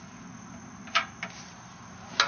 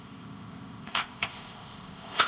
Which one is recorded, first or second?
first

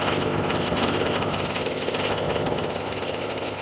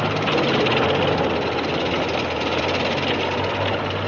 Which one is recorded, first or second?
second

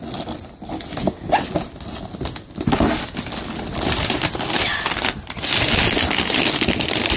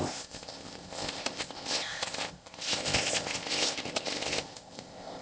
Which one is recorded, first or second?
first